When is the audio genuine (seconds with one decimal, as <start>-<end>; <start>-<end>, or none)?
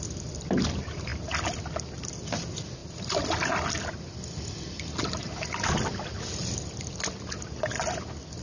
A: 0.0-8.4